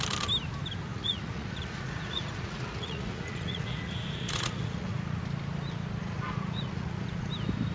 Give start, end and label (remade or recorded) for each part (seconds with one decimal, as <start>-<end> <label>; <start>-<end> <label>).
0.0-0.9 recorded; 0.9-5.2 remade; 5.2-6.0 recorded; 6.0-7.3 remade; 7.3-7.7 recorded